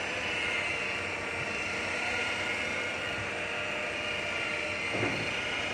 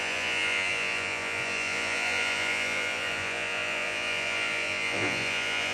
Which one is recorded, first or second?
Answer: first